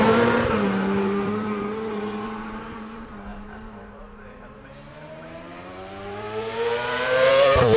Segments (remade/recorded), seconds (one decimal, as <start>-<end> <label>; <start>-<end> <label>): 0.0-7.8 remade